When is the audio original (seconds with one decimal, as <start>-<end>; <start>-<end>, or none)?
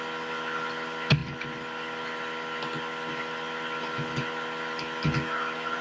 0.0-5.8